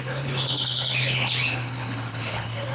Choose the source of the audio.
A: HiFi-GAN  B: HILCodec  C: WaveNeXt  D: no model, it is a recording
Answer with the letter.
B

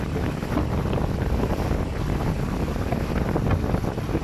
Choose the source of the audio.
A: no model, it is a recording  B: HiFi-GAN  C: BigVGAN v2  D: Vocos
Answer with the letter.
A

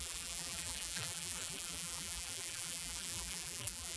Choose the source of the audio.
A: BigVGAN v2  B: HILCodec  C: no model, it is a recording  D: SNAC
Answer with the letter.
A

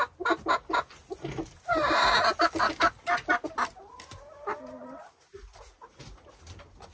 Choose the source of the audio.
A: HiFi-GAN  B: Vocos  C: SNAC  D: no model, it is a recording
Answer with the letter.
D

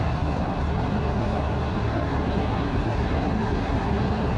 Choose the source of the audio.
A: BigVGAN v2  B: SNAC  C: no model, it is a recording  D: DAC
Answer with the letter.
B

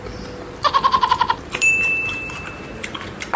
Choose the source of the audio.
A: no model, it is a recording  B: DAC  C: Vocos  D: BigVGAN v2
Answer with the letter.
D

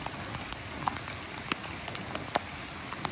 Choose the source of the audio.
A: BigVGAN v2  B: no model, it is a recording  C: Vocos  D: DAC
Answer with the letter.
B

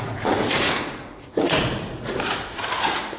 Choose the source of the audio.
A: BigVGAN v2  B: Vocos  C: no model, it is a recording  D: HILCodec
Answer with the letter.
B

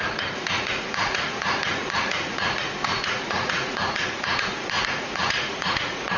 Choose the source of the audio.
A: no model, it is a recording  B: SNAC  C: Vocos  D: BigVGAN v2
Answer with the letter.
C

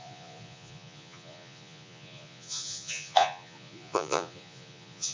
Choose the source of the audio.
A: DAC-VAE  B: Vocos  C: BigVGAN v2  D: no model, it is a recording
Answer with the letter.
B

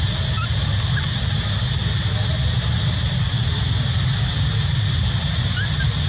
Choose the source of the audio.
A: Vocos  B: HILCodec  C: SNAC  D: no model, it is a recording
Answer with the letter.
D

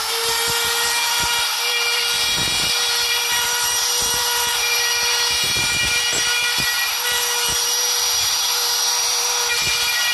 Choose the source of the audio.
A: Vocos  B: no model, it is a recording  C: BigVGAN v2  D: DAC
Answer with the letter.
C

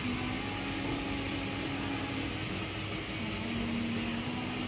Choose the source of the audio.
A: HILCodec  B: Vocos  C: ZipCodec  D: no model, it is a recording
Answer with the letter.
D